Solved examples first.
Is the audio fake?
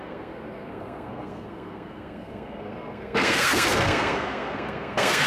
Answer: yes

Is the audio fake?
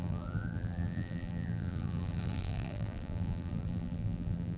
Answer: yes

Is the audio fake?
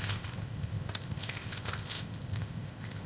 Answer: yes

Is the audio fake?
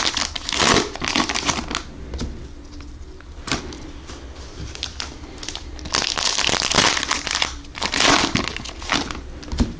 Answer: no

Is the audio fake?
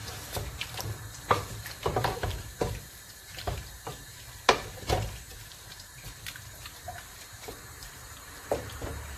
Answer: yes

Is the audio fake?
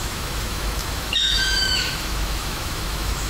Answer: yes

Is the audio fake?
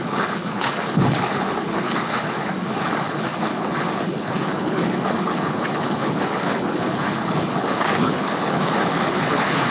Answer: yes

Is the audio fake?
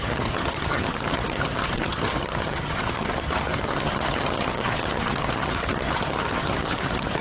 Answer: yes